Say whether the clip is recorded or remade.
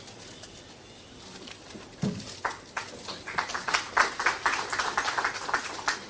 recorded